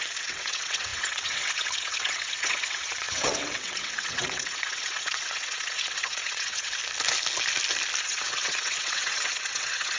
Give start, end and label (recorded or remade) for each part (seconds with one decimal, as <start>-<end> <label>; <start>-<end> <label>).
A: 0.0-6.8 remade; 6.8-8.0 recorded; 8.0-10.0 remade